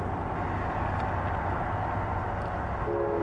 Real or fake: real